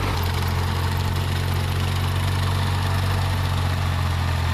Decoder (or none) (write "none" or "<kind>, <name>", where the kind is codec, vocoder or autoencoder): none